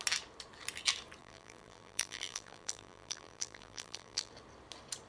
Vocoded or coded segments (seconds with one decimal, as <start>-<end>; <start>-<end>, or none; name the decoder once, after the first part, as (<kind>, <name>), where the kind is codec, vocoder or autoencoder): 1.2-4.3 (vocoder, BigVGAN v2)